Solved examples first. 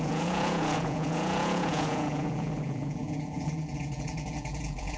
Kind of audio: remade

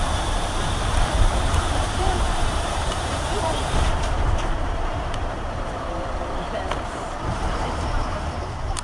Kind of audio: remade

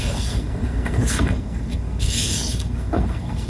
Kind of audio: remade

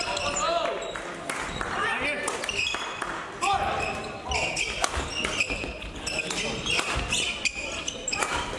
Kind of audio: recorded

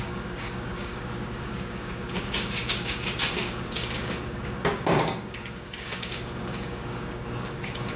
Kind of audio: remade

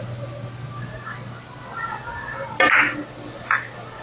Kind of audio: recorded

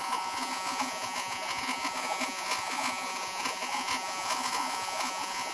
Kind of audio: remade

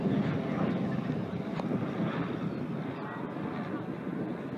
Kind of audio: recorded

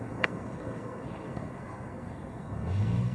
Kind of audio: remade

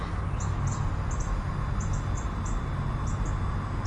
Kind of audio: recorded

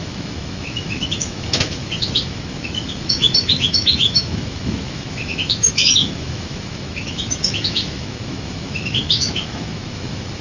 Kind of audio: remade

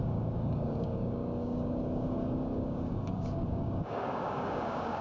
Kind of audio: remade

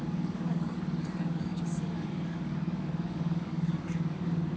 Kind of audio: remade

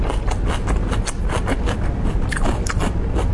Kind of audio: recorded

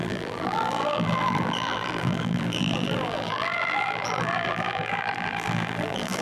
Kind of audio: remade